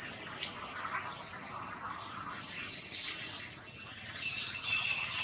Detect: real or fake real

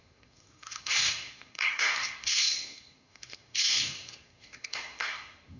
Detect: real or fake fake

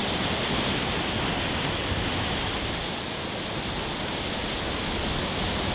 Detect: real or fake real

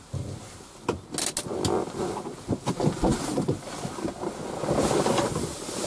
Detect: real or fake real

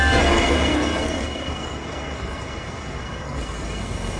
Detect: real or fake fake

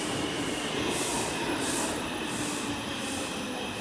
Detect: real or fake real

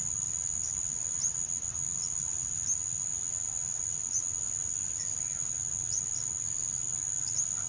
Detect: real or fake real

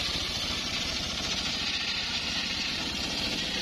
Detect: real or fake real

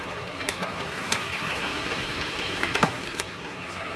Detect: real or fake fake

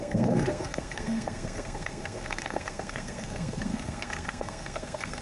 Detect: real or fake fake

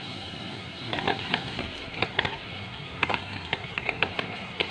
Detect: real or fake fake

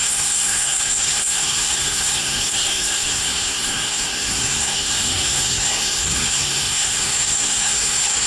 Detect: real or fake fake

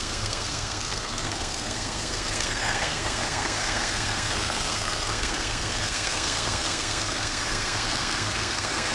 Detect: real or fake fake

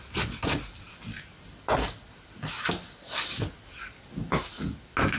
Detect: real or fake real